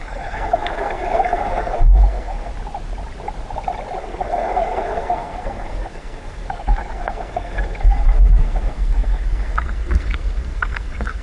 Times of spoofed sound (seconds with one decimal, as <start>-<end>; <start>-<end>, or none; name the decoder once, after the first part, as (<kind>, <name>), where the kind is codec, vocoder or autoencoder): 0.0-2.5 (codec, SNAC); 4.0-11.2